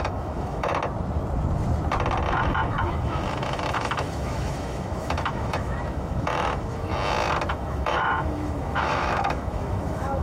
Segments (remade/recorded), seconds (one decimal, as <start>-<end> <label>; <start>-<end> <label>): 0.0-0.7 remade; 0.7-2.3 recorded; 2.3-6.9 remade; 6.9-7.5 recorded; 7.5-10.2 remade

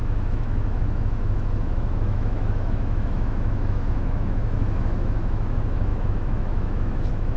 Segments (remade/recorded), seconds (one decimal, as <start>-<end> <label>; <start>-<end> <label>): 0.0-7.4 remade

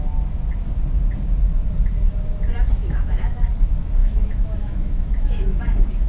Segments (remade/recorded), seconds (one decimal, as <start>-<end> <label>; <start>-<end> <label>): 0.0-2.8 recorded; 2.8-3.4 remade; 3.4-4.0 recorded; 4.0-5.6 remade; 5.6-6.1 recorded